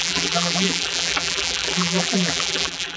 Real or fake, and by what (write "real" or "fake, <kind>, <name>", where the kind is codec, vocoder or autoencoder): fake, vocoder, BigVGAN v2